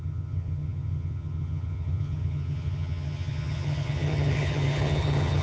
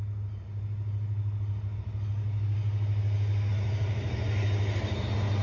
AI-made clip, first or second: first